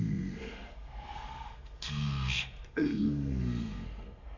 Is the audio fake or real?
fake